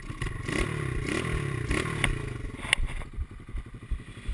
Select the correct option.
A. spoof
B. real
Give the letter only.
A